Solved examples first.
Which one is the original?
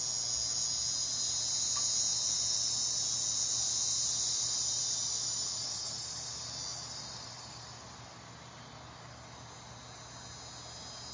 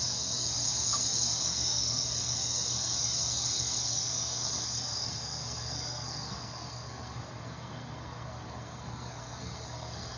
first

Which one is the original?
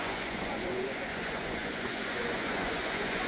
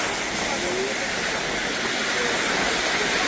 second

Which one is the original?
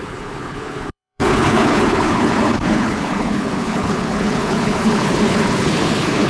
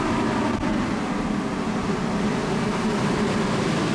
second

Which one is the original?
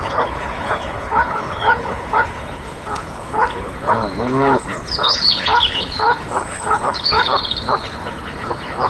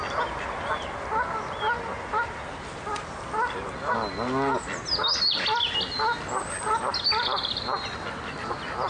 second